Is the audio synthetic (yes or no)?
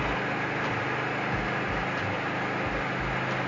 no